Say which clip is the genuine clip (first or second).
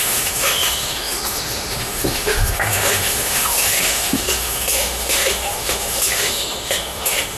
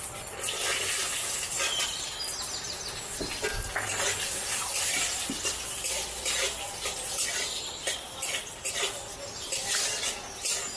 second